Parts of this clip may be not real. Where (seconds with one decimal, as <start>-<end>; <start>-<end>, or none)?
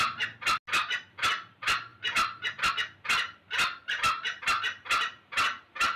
none